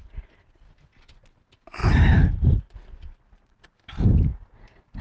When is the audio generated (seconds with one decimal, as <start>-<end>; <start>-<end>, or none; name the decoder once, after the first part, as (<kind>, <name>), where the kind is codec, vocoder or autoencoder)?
1.8-3.8 (vocoder, BigVGAN v2)